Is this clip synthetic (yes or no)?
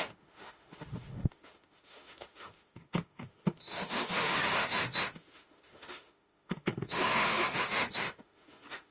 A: yes